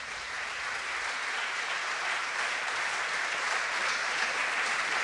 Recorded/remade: remade